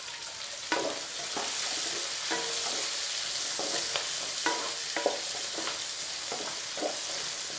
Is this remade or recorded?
recorded